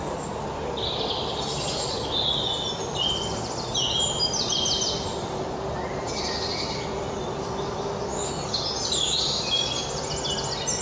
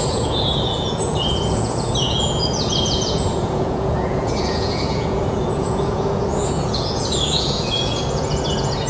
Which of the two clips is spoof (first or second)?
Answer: second